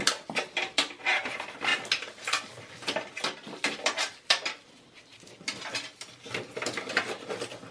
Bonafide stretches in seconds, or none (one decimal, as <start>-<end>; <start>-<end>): 0.0-7.7